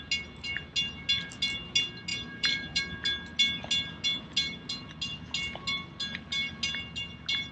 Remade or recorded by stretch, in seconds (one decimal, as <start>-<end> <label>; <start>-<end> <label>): 0.0-2.1 recorded; 2.1-2.8 remade; 2.8-7.5 recorded